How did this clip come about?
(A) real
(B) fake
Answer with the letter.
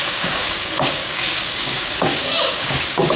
B